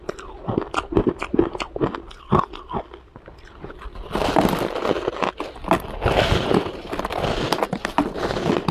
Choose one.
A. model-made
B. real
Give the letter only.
B